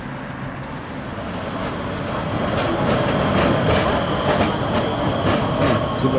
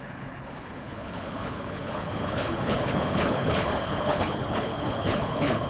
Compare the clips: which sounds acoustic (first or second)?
first